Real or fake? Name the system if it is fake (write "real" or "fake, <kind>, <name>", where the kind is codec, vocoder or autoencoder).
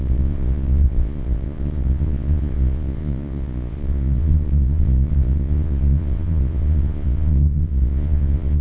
fake, vocoder, Vocos